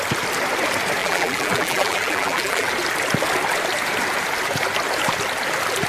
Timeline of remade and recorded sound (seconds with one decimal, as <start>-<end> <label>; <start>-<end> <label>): 0.0-1.0 recorded; 1.0-2.7 remade; 2.7-5.9 recorded